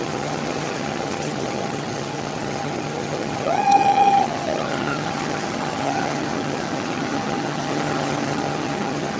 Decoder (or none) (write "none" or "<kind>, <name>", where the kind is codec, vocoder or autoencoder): vocoder, HiFi-GAN